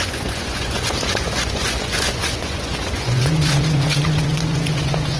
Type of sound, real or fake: fake